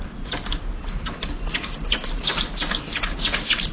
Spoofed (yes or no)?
no